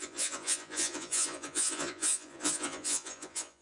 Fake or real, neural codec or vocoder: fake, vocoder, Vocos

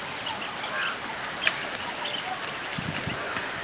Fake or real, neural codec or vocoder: real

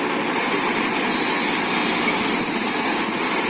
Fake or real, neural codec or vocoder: real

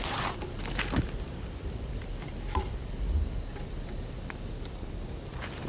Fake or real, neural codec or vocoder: real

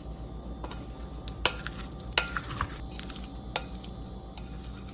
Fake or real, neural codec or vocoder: real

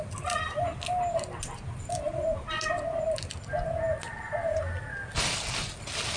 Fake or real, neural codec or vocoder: real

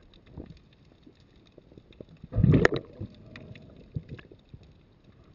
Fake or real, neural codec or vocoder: real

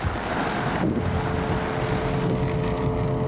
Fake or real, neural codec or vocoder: real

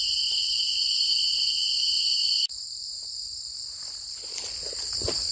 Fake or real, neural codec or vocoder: real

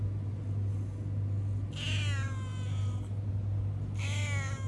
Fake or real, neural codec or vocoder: real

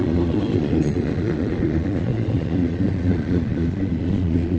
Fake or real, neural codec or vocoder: fake, vocoder, Vocos